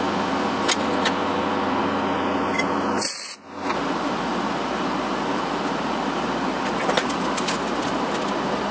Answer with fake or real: real